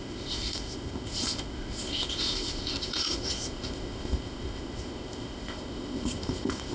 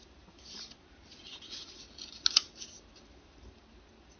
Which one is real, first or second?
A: second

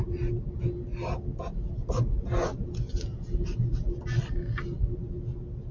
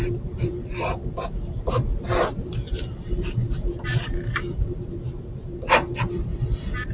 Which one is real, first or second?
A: first